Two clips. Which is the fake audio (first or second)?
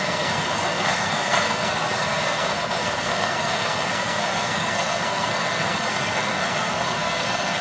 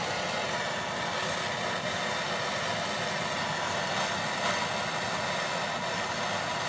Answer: first